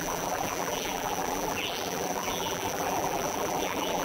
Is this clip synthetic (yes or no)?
yes